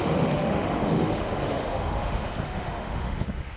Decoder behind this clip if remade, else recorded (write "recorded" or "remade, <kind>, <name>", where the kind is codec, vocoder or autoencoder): remade, autoencoder, DAC-VAE